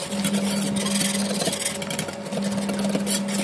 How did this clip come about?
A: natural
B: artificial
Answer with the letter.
A